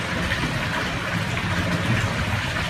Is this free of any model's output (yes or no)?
yes